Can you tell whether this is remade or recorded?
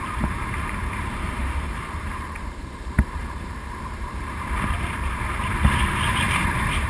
remade